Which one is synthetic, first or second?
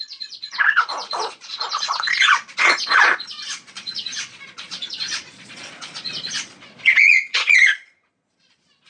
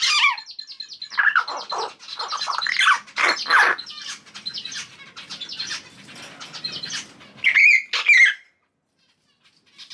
first